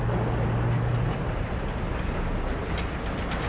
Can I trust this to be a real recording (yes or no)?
yes